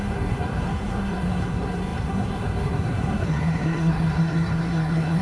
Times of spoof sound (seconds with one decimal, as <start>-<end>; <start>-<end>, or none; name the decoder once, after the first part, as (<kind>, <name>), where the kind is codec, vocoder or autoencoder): 0.0-5.2 (codec, SNAC)